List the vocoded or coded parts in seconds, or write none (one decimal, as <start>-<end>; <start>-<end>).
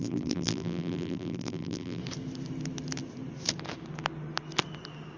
0.0-2.0